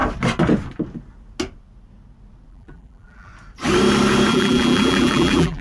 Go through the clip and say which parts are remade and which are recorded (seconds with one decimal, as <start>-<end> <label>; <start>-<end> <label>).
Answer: 0.0-2.5 recorded; 2.5-3.3 remade; 3.3-4.3 recorded; 4.3-5.6 remade